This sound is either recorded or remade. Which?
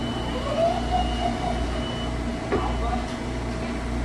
recorded